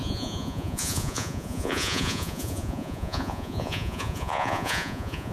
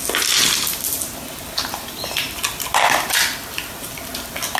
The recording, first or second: second